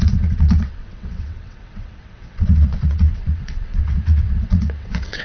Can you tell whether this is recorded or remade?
remade